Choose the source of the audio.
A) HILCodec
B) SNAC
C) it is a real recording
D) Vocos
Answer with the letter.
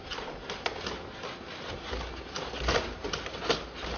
C